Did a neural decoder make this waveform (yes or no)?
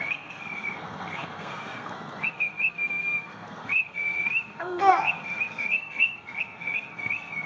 yes